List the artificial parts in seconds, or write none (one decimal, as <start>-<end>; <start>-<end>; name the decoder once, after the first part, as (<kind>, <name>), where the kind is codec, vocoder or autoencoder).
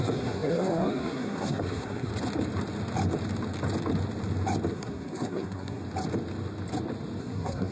0.0-2.1 (codec, SNAC); 4.7-5.8; 7.2-7.7